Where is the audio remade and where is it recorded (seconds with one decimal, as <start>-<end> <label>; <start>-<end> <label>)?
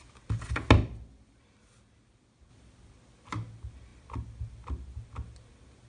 0.0-5.9 recorded